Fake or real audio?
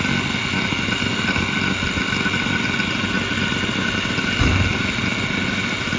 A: real